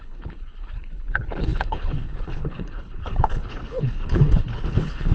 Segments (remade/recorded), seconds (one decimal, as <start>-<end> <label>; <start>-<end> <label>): 0.0-5.1 remade